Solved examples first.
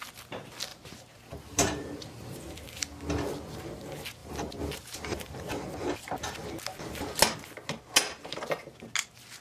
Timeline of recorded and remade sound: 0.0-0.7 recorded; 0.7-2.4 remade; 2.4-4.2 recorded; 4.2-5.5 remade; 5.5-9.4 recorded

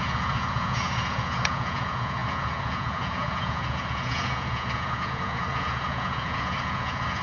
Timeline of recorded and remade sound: 0.0-7.2 remade

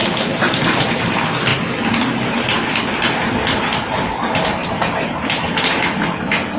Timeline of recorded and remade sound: 0.0-1.0 remade; 1.0-4.6 recorded; 4.6-5.7 remade; 5.7-6.6 recorded

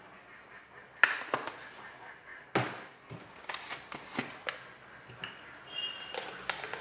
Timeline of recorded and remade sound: 0.0-6.8 recorded

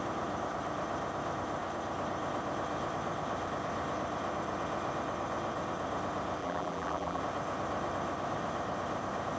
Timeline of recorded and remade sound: 0.0-6.4 recorded; 6.4-7.2 remade; 7.2-9.4 recorded

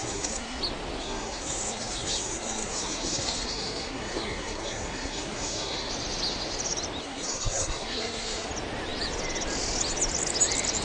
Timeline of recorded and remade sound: 0.0-0.6 remade; 0.6-1.0 recorded; 1.0-5.9 remade; 5.9-7.0 recorded; 7.0-8.5 remade; 8.5-10.8 recorded

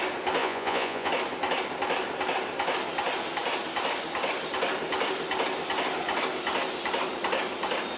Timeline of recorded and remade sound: 0.0-0.4 recorded; 0.4-1.1 remade; 1.1-8.0 recorded

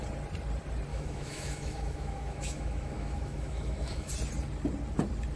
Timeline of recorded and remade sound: 0.0-0.9 recorded; 0.9-4.1 remade; 4.1-5.4 recorded